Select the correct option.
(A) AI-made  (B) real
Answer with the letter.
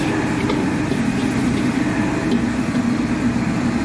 B